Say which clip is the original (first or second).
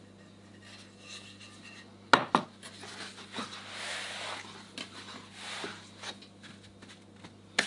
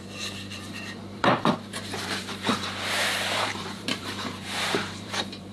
first